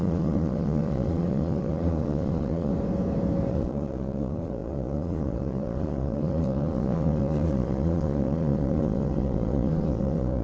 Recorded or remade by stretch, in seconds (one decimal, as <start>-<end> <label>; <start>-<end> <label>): 0.0-2.7 remade; 2.7-3.5 recorded; 3.5-10.4 remade